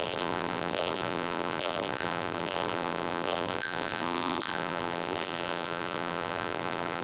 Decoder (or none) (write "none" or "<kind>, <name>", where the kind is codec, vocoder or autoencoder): vocoder, BigVGAN v2